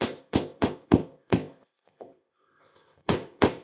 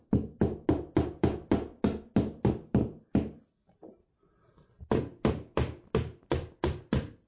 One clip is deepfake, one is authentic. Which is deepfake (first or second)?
first